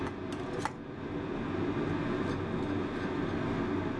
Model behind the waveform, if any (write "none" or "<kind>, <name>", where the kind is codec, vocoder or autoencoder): none